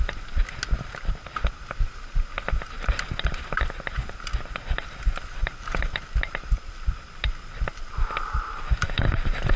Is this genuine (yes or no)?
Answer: yes